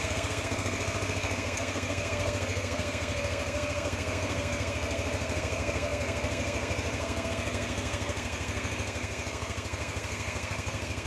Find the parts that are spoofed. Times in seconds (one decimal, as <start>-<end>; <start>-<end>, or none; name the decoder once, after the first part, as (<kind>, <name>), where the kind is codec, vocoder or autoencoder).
0.0-11.1 (codec, SNAC)